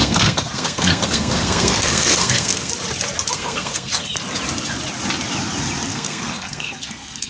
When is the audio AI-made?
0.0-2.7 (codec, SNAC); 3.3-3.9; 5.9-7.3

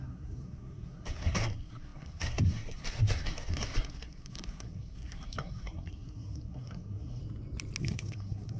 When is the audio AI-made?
0.0-7.2 (codec, SNAC); 7.8-8.6

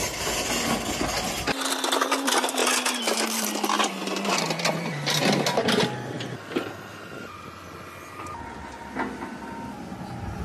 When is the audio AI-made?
none

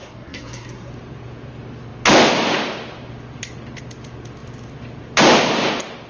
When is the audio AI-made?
0.0-0.9 (codec, SNAC)

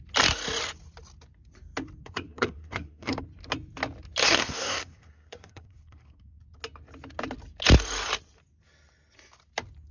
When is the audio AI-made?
2.0-3.2 (codec, SNAC); 4.2-6.4

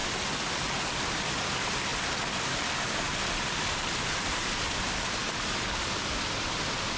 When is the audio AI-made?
none

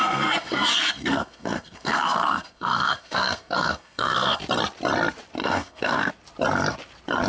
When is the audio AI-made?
0.0-4.4 (codec, SNAC); 5.4-6.1

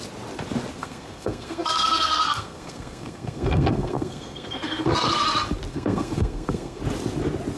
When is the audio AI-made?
0.8-5.2 (codec, SNAC); 5.7-6.8